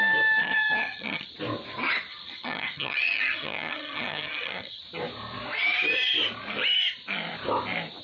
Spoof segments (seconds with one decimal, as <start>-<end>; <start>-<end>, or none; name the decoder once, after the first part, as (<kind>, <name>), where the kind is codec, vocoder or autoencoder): 0.4-1.3 (vocoder, HiFi-GAN); 2.1-4.8